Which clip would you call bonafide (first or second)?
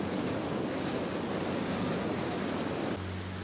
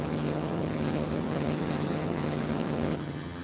first